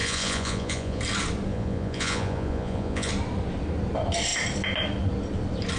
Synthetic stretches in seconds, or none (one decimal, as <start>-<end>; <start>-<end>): 0.0-1.0; 1.5-3.1